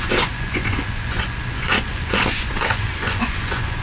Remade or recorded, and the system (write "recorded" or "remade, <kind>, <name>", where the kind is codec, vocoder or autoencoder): remade, vocoder, Vocos